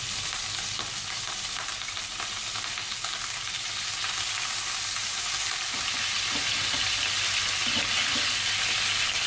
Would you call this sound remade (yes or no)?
no